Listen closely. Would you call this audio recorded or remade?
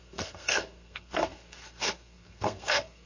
remade